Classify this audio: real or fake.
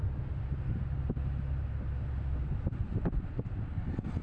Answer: real